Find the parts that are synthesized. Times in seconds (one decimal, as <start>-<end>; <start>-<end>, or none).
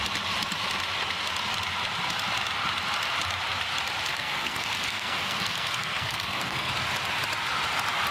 4.1-6.7